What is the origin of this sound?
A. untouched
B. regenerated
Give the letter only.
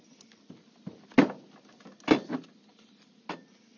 A